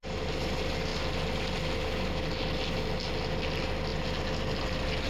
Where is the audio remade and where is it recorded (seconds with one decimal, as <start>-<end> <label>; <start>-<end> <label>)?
0.0-5.1 recorded